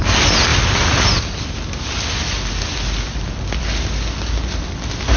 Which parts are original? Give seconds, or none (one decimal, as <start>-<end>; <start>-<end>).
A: 0.0-5.2